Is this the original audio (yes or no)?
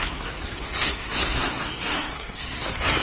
no